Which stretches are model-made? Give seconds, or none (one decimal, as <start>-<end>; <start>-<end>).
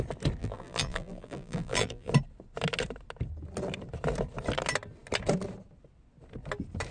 0.4-2.1